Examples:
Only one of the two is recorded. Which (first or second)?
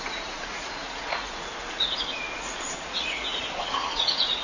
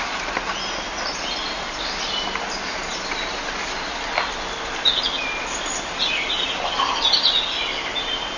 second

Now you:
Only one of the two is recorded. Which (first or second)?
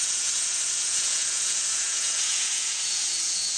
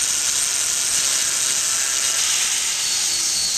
second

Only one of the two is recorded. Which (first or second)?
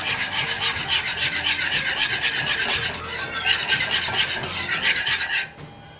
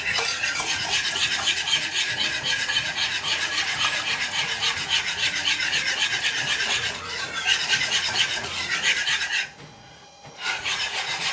first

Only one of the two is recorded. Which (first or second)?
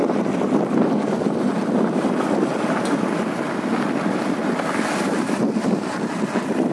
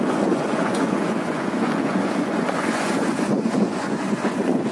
first